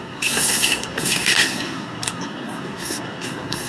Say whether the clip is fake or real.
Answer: fake